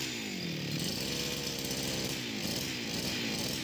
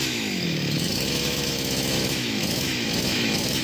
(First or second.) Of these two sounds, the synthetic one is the second